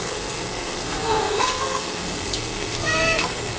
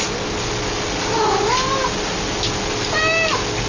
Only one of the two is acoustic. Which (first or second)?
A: second